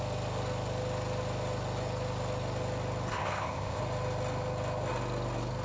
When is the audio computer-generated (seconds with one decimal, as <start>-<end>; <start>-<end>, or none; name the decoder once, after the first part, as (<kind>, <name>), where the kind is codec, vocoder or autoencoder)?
3.1-3.8 (codec, ZipCodec)